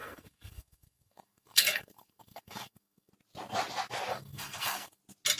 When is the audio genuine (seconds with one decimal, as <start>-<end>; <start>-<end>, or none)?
3.1-4.1; 5.0-5.4

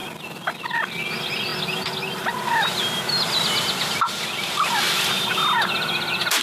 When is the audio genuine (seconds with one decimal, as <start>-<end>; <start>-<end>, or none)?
0.0-6.4

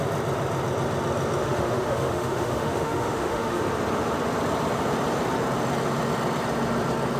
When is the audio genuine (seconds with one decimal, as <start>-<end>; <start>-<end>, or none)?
0.0-1.4; 3.6-7.2

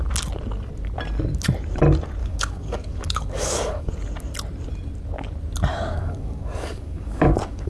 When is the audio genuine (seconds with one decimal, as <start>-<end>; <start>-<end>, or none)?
0.0-2.2; 3.9-5.7